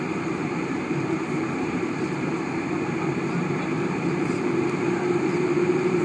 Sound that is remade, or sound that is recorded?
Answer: remade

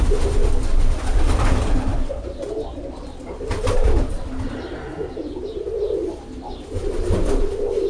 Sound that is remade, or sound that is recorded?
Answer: remade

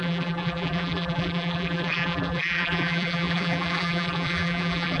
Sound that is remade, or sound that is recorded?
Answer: remade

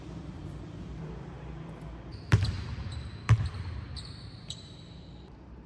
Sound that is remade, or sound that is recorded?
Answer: remade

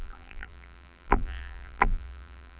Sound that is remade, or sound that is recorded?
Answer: remade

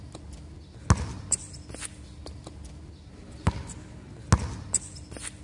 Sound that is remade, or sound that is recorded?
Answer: recorded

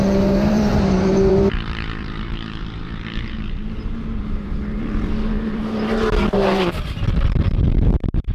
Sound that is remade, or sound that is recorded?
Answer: remade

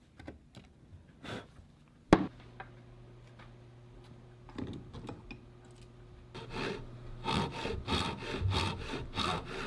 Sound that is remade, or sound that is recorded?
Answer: recorded